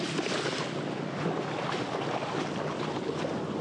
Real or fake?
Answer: real